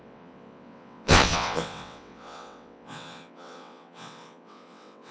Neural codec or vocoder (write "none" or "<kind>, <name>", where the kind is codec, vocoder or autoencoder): vocoder, WaveNeXt